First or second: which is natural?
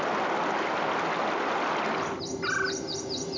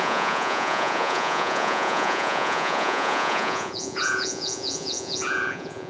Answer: first